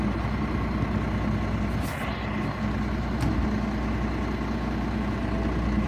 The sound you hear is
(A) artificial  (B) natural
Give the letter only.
B